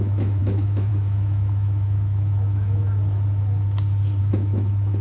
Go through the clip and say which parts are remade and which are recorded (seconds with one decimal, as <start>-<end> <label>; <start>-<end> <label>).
0.0-2.8 remade; 2.8-4.2 recorded; 4.2-5.0 remade